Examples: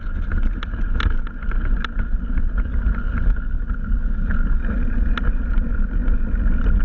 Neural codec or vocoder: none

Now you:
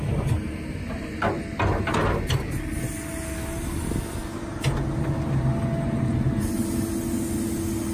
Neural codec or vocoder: none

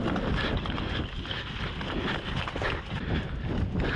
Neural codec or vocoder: none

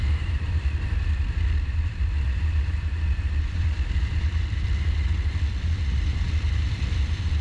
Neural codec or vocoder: vocoder, BigVGAN v2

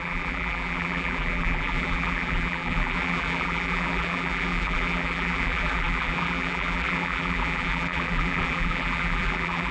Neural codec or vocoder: vocoder, BigVGAN v2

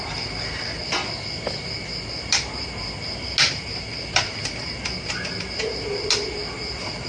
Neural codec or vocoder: none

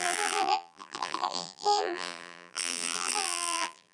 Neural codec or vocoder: vocoder, BigVGAN v2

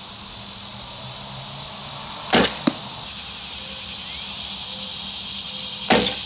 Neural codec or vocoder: none